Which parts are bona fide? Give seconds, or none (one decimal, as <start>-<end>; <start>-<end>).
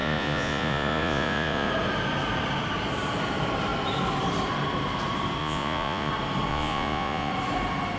1.7-5.4; 6.1-6.5; 7.3-8.0